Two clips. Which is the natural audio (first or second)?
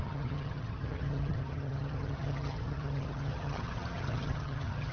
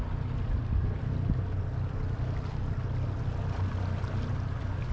second